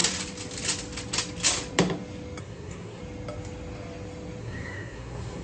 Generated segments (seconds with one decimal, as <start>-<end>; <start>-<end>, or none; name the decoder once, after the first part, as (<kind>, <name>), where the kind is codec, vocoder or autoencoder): 2.4-3.0 (codec, SNAC); 4.4-5.4